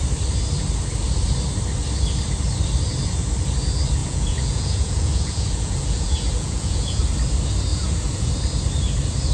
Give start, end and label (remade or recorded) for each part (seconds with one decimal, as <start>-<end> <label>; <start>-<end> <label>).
0.0-4.0 recorded; 4.0-7.0 remade; 7.0-7.7 recorded; 7.7-8.3 remade; 8.3-9.3 recorded